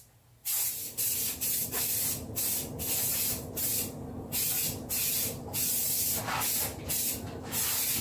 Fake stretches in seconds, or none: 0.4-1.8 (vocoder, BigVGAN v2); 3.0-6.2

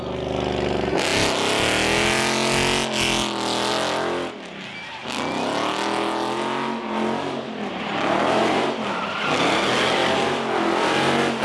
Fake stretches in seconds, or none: none

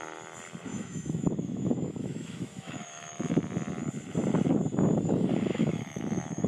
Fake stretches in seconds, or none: 0.7-3.3 (autoencoder, DAC-VAE); 5.5-6.5

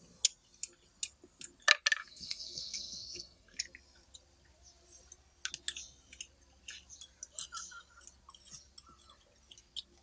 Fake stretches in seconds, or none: 2.0-3.6 (codec, SNAC)

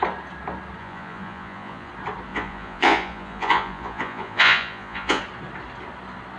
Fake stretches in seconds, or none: 0.8-1.9 (vocoder, Vocos); 2.3-5.2